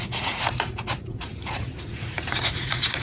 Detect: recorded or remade remade